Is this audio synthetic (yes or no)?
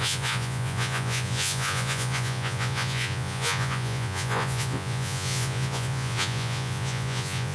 yes